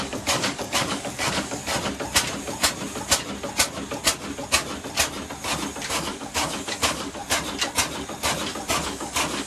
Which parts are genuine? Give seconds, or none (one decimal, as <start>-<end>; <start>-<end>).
1.6-5.9; 7.2-8.7